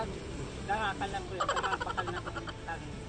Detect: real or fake real